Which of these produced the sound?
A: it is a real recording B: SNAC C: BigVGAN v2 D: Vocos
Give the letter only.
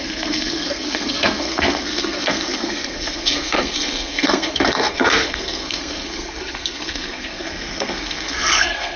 B